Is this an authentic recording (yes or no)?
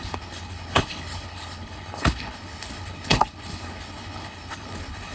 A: no